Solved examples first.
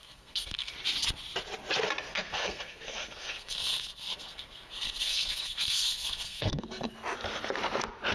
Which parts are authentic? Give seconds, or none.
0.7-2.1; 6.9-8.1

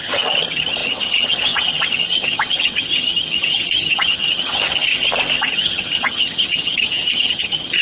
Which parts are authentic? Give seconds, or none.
4.9-5.4